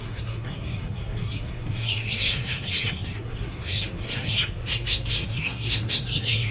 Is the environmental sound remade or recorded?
remade